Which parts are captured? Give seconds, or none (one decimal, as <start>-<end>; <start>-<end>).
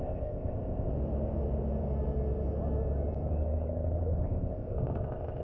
0.9-4.1